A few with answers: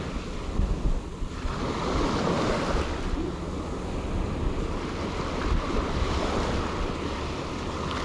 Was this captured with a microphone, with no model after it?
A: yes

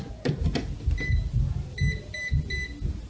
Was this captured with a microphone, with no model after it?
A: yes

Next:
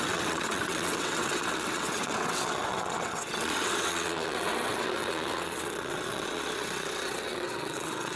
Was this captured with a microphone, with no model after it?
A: no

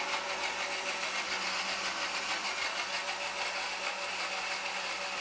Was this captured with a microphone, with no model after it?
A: yes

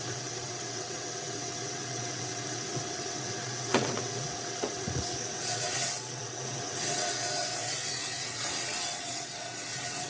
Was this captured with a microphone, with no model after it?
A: no